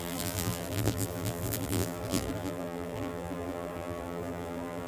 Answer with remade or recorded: remade